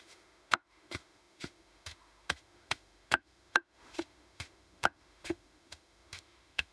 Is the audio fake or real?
fake